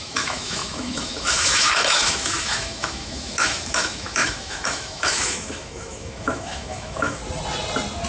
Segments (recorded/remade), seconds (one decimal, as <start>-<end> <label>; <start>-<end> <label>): 0.0-7.2 remade; 7.2-8.1 recorded